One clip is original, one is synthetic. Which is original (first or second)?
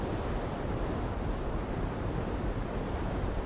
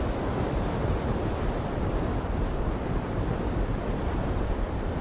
first